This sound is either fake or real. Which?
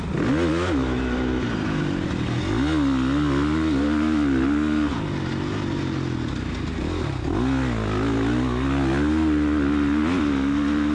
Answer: real